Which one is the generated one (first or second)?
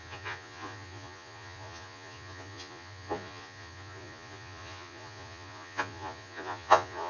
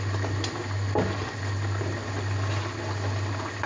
first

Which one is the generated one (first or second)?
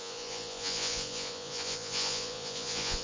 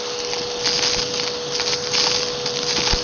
first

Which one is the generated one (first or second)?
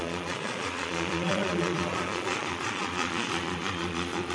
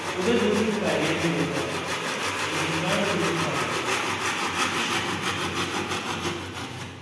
first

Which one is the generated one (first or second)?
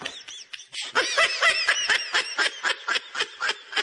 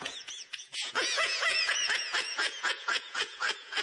second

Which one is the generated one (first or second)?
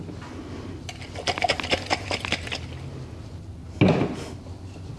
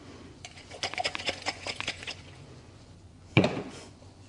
second